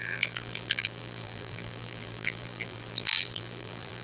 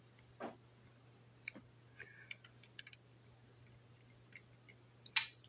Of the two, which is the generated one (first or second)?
first